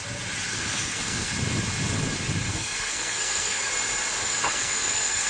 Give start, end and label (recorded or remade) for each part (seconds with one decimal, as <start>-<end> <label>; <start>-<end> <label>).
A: 0.0-0.5 recorded; 0.5-1.3 remade; 1.3-2.5 recorded; 2.5-3.7 remade; 3.7-4.3 recorded; 4.3-5.3 remade